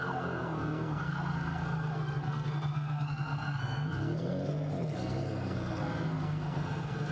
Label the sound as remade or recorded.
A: remade